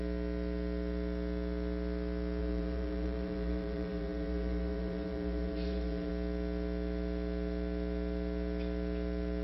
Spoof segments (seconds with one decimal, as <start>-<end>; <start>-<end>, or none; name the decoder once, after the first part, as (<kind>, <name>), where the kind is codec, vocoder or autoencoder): 2.4-6.1 (vocoder, BigVGAN v2)